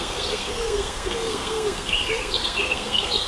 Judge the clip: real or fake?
fake